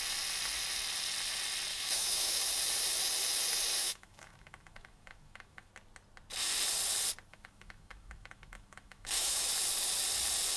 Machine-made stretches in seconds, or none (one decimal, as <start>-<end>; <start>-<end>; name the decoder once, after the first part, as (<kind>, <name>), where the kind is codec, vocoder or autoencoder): 1.7-2.4 (autoencoder, DAC-VAE); 3.8-5.7; 7.3-9.4